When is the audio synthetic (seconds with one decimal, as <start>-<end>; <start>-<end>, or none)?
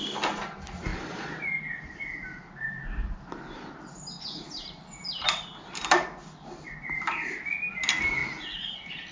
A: none